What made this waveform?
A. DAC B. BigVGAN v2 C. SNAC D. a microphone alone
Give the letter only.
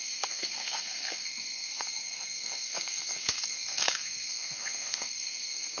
C